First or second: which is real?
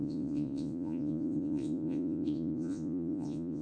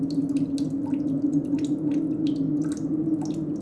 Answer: second